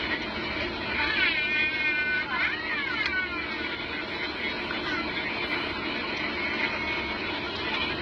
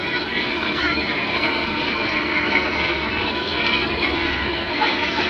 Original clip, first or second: first